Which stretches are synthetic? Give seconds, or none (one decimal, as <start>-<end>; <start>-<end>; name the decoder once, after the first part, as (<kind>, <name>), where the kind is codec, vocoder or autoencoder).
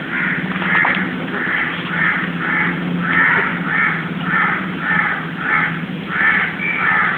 3.5-5.7 (vocoder, BigVGAN v2)